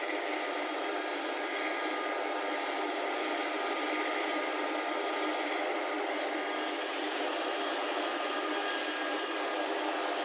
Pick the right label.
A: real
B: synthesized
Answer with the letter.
A